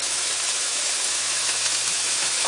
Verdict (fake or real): fake